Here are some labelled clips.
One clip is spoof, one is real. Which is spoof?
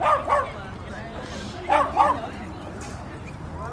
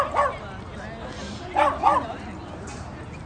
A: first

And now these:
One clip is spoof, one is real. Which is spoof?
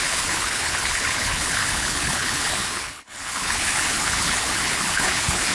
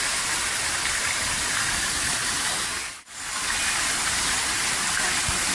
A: first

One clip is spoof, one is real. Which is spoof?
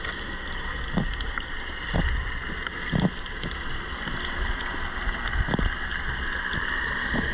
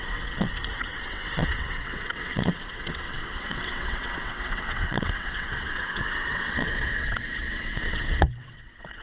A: second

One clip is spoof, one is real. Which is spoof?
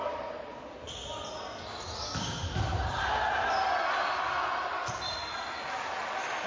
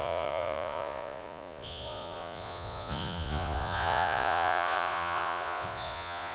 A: second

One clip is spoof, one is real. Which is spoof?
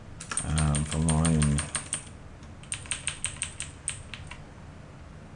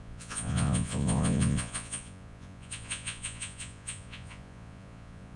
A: second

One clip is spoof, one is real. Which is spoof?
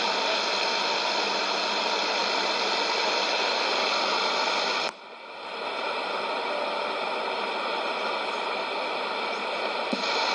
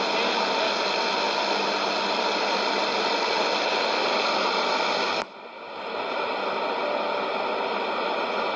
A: first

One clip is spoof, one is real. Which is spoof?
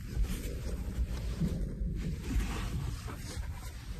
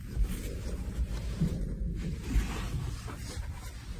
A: first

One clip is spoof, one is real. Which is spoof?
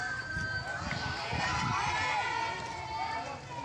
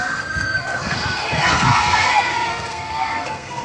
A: second